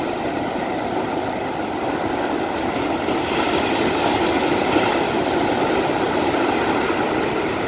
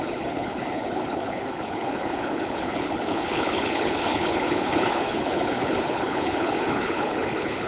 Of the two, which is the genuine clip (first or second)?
first